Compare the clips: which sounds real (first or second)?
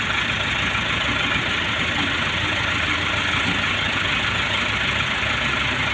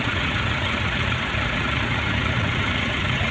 first